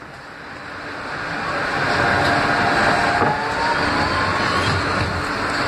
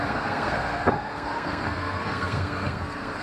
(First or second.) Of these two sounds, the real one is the first